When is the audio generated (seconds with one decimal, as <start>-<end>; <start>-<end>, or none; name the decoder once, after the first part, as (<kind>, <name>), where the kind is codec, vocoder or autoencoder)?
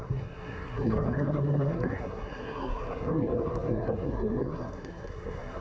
0.0-5.6 (codec, SNAC)